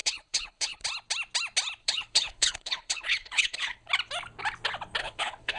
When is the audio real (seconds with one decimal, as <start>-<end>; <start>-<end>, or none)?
0.8-1.8; 3.9-5.0